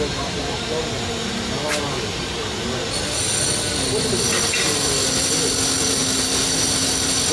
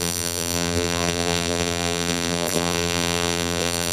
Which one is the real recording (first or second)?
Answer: first